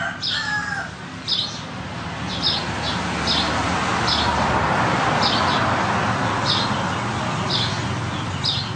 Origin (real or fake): real